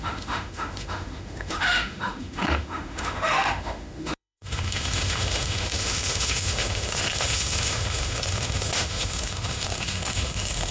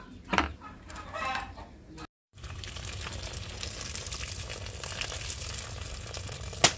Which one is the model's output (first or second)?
first